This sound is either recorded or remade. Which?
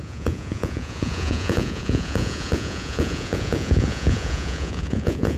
remade